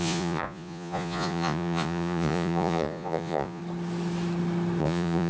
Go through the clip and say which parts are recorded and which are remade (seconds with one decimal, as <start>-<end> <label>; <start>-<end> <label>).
0.0-3.6 remade; 3.6-4.8 recorded; 4.8-5.3 remade